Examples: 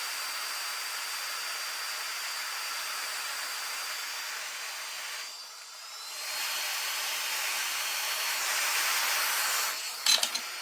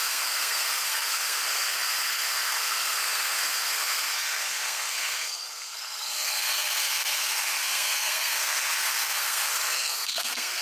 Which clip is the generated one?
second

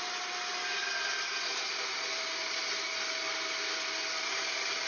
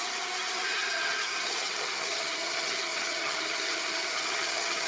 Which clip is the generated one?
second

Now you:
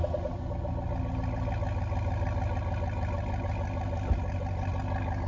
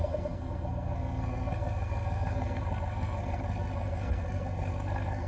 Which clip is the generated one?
second